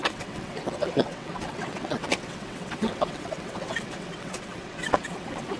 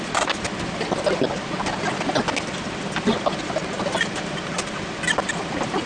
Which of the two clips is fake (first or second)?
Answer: first